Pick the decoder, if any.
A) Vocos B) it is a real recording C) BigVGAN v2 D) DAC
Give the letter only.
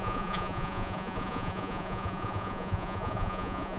A